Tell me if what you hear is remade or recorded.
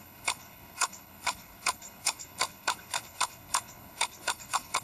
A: remade